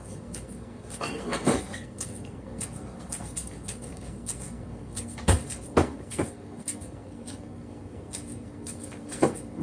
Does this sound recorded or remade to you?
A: remade